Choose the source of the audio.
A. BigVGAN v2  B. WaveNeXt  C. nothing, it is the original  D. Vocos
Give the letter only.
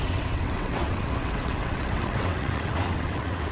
B